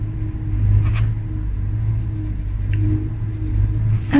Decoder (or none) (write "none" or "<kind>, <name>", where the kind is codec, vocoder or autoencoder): none